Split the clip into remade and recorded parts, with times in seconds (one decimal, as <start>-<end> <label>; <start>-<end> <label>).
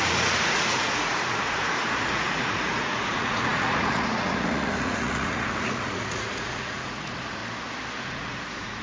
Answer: 0.0-7.4 remade; 7.4-8.0 recorded; 8.0-8.8 remade